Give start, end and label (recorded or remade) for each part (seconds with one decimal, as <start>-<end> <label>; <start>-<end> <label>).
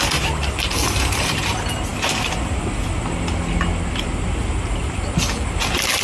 0.0-6.0 recorded